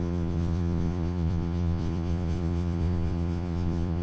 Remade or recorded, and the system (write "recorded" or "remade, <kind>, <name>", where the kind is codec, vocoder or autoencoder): remade, vocoder, Vocos